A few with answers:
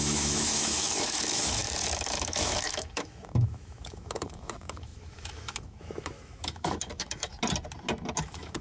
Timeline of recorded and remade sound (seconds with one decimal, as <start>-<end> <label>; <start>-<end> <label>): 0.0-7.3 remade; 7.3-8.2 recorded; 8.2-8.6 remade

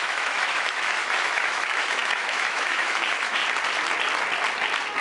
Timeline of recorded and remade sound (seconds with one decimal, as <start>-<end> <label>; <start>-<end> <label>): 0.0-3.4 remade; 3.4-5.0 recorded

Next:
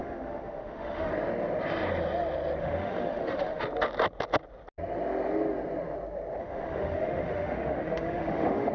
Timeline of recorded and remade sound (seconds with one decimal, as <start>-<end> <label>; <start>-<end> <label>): 0.0-1.1 remade; 1.1-2.6 recorded; 2.6-3.6 remade; 3.6-6.4 recorded; 6.4-8.7 remade

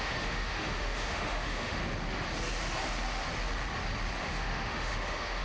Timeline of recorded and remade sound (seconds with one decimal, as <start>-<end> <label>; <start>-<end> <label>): 0.0-1.8 remade; 1.8-4.2 recorded; 4.2-5.4 remade